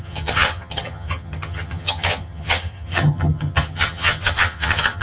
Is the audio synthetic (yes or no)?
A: yes